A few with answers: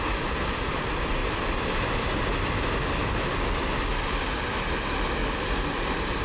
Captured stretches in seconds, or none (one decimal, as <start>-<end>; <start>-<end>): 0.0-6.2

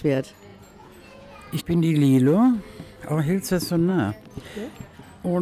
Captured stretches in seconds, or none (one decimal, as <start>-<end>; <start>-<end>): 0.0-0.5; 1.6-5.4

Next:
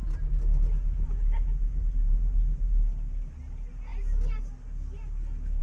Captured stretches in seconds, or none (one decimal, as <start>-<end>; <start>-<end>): 0.0-5.6

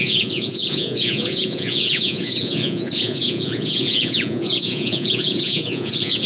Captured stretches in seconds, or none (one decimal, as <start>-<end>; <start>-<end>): none

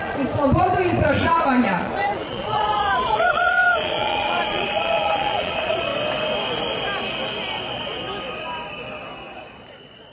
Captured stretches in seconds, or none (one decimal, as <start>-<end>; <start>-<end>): 5.9-9.4

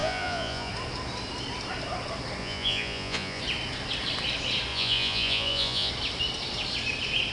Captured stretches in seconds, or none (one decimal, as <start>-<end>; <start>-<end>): 0.7-2.4; 3.4-4.7; 5.9-7.3